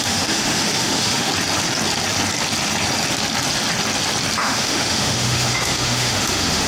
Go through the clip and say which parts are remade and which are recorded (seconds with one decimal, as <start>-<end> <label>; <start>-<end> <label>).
0.0-1.3 remade; 1.3-4.4 recorded; 4.4-6.7 remade